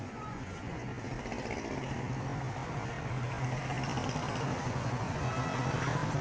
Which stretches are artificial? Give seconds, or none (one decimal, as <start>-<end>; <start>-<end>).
0.0-0.9; 4.6-5.2